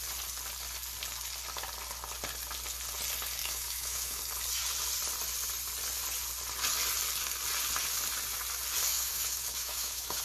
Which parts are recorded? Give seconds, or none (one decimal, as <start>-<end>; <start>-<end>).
0.0-3.4; 4.2-8.9